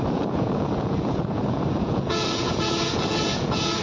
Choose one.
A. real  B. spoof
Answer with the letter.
B